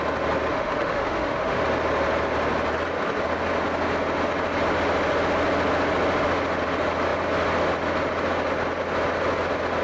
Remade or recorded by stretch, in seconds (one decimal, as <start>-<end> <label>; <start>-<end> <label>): 0.0-0.5 recorded; 0.5-1.6 remade; 1.6-9.8 recorded